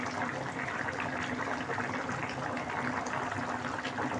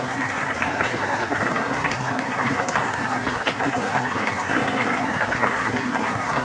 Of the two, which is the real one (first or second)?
first